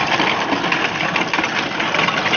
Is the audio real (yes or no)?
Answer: yes